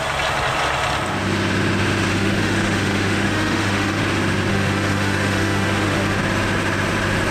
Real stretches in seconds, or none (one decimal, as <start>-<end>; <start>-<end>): 0.0-2.1; 4.0-4.5; 6.2-7.3